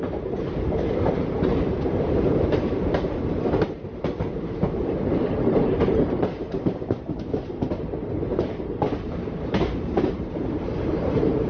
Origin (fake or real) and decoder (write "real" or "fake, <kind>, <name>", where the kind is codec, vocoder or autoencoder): fake, vocoder, BigVGAN v2